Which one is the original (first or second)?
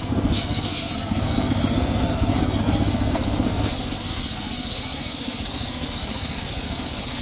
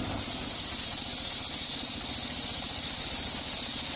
second